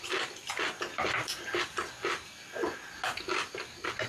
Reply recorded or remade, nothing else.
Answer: recorded